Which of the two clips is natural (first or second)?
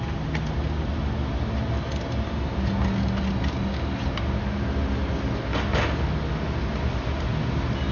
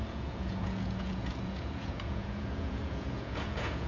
first